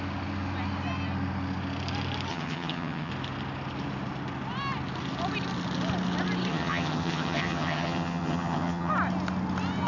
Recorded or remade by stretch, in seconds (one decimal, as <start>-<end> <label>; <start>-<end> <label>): 0.0-2.3 recorded; 2.3-3.1 remade; 3.1-6.5 recorded; 6.5-8.9 remade; 8.9-9.9 recorded